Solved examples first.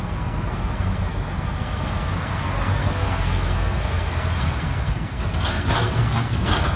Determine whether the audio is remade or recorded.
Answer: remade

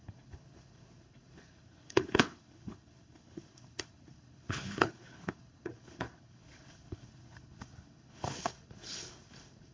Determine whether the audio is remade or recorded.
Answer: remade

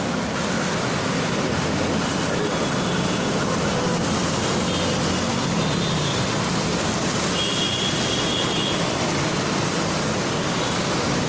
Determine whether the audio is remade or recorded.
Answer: recorded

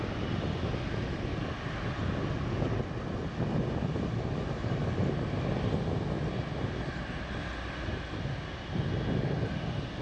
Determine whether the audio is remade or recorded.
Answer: recorded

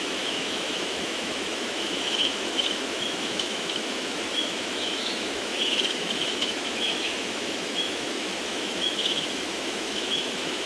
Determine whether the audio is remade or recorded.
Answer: remade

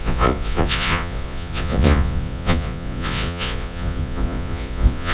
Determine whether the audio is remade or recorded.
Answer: remade